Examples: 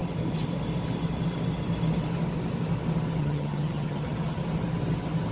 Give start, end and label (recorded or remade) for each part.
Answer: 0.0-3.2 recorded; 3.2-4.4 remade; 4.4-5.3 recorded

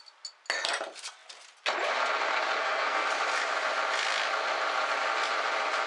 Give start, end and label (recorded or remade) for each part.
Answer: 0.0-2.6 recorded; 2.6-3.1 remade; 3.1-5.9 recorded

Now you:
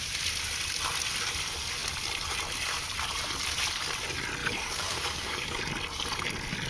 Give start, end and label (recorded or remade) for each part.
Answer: 0.0-4.4 recorded; 4.4-5.6 remade; 5.6-6.7 recorded

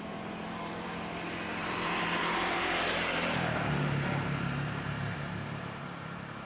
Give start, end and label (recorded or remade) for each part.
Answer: 0.0-6.5 remade